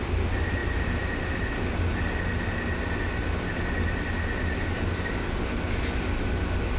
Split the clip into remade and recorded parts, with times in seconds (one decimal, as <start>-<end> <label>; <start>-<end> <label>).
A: 0.0-6.8 recorded